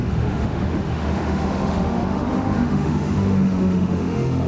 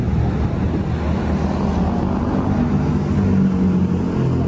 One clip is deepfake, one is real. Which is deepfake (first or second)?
first